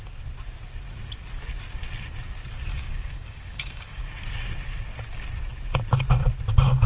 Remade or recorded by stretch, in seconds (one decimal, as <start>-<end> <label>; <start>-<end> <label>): 0.0-2.7 recorded; 2.7-4.0 remade; 4.0-6.9 recorded